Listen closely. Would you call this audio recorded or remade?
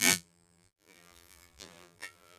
remade